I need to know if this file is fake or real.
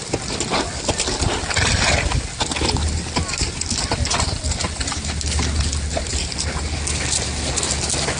real